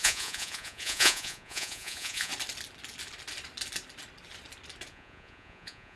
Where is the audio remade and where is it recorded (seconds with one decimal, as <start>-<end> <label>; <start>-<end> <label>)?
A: 0.0-2.3 remade; 2.3-4.9 recorded; 4.9-6.0 remade